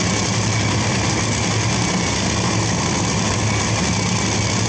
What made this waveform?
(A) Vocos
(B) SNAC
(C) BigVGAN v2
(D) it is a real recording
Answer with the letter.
D